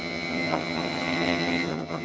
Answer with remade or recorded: remade